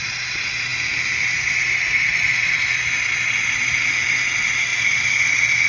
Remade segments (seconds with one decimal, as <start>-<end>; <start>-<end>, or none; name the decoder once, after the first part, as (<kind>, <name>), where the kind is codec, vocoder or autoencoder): none

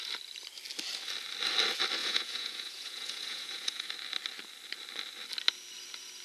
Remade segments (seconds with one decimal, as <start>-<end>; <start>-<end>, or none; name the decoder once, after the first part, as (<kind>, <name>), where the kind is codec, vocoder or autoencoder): 2.0-3.9 (vocoder, Vocos)